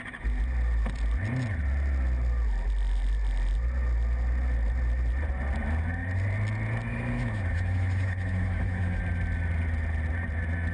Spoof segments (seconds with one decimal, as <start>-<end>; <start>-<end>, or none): 6.9-9.0